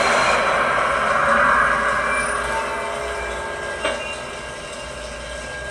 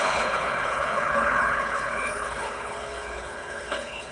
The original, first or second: first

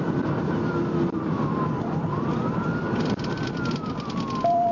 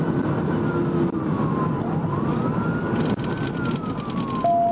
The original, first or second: second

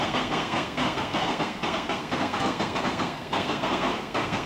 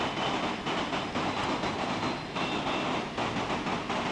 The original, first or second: second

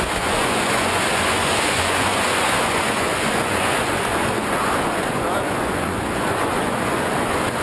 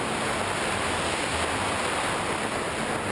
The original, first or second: second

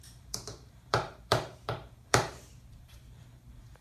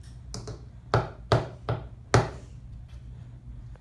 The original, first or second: second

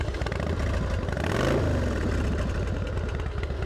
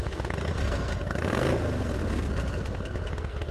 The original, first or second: first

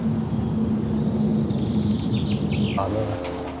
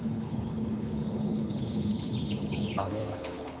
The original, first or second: first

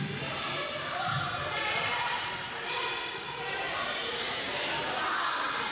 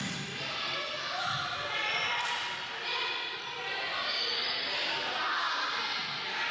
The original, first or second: second